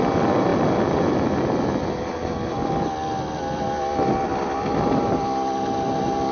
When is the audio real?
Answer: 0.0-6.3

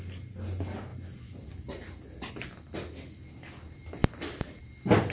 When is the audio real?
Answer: 0.0-5.1

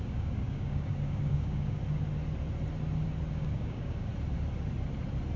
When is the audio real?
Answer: 1.8-3.3; 4.1-5.4

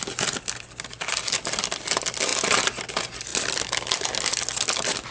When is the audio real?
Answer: 0.0-5.1

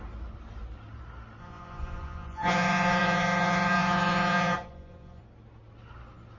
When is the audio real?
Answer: 0.0-1.4; 5.2-6.4